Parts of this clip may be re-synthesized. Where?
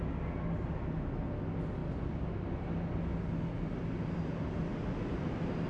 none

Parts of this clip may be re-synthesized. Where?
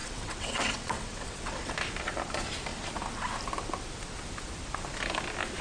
0.0-1.7 (vocoder, WaveNeXt)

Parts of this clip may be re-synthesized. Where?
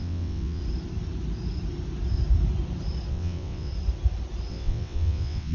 0.0-0.6 (vocoder, WaveNeXt); 3.1-3.7; 4.5-5.5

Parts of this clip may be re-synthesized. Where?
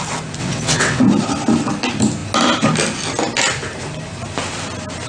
0.4-1.0 (vocoder, WaveNeXt)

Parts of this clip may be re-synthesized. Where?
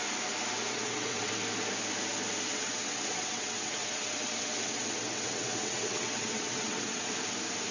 0.6-1.3 (vocoder, WaveNeXt); 2.5-7.1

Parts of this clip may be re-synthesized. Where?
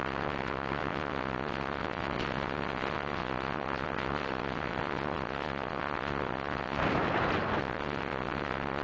0.0-6.8 (vocoder, WaveNeXt); 7.6-8.8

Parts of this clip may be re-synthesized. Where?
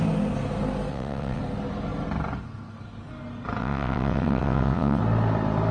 0.9-1.4 (vocoder, WaveNeXt); 3.6-5.0